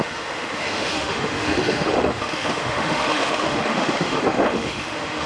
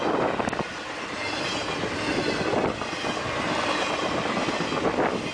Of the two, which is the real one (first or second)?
second